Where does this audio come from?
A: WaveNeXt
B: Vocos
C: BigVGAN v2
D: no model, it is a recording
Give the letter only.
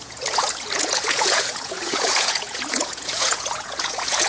B